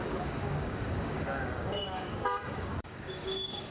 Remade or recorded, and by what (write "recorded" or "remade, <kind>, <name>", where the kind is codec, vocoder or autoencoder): remade, codec, DAC